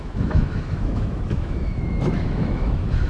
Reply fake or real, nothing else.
fake